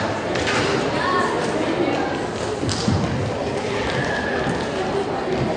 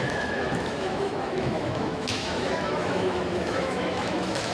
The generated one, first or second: second